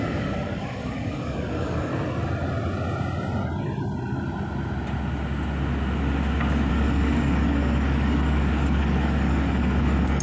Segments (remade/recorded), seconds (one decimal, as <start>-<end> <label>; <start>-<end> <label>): 0.0-1.9 remade; 1.9-6.7 recorded; 6.7-10.2 remade